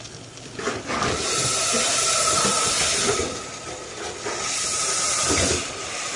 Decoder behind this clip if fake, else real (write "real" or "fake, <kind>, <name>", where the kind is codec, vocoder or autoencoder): real